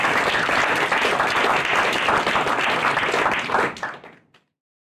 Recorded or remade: recorded